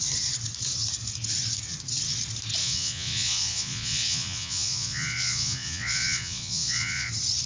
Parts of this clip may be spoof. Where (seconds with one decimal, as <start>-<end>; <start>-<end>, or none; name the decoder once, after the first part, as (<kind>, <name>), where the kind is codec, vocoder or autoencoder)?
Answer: 2.6-7.1 (vocoder, Vocos)